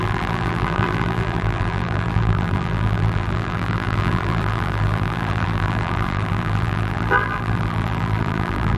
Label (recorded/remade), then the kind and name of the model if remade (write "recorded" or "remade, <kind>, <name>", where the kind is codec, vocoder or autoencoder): remade, vocoder, BigVGAN v2